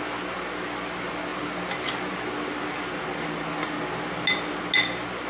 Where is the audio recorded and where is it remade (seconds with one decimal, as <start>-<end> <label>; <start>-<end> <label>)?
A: 0.0-5.3 recorded